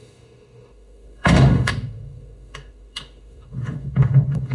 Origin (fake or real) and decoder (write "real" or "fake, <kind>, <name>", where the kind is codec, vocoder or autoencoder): fake, autoencoder, DAC-VAE